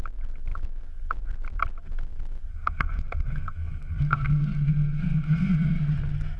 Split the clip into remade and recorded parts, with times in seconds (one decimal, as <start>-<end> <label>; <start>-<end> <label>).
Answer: 0.0-2.5 recorded; 2.5-5.8 remade; 5.8-6.4 recorded